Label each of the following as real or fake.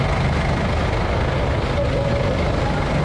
real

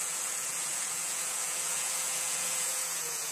fake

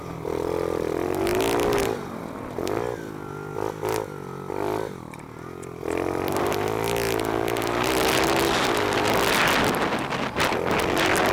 real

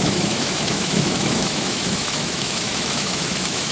fake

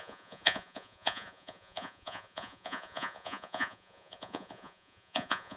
fake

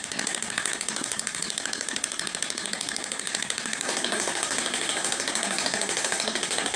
fake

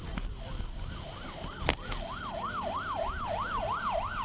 real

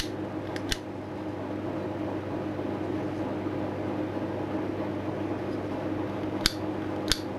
real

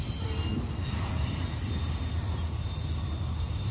real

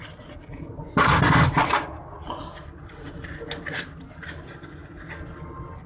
real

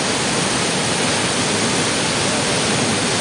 real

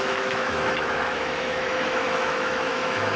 fake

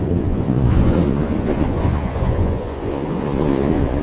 fake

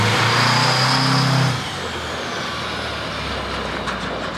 real